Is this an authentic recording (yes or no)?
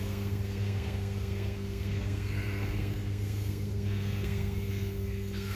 no